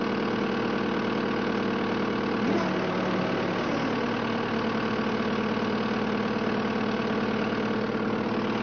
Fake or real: real